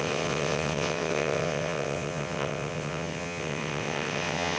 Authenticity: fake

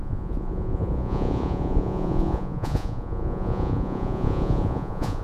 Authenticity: fake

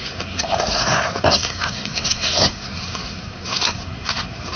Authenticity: fake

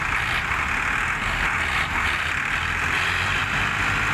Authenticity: real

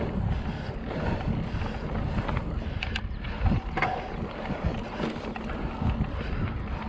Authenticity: real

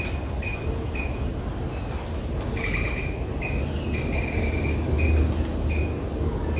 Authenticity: real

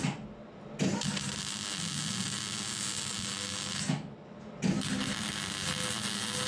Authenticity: real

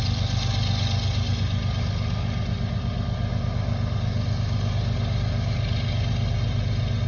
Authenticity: real